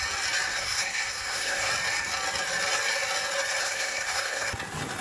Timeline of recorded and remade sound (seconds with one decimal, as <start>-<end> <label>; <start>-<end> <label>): 0.0-0.5 recorded; 0.5-1.7 remade; 1.7-3.6 recorded; 3.6-4.5 remade; 4.5-5.0 recorded

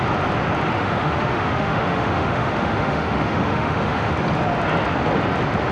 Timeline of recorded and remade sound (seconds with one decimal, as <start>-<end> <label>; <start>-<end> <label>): 0.0-0.7 recorded; 0.7-4.1 remade; 4.1-5.7 recorded

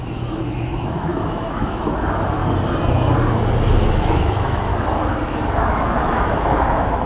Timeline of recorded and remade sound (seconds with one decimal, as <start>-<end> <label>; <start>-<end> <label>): 0.0-2.4 remade; 2.4-3.9 recorded; 3.9-4.7 remade; 4.7-5.7 recorded; 5.7-7.1 remade

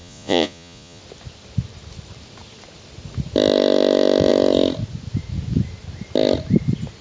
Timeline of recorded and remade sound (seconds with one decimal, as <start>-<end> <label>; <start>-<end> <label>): 0.0-1.0 remade; 1.0-7.0 recorded

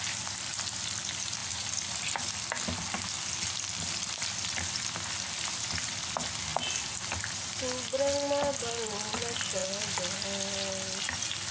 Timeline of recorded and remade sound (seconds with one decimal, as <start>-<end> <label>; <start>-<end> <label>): 0.0-11.5 recorded

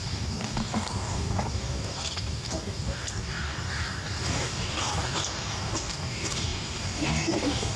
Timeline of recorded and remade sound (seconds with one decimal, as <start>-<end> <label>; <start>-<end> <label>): 0.0-7.8 remade